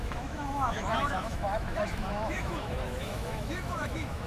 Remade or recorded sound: remade